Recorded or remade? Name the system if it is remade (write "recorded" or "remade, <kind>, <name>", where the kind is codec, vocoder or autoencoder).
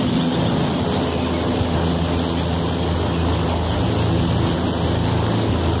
recorded